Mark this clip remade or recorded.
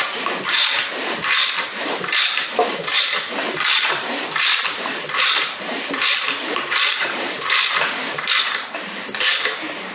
remade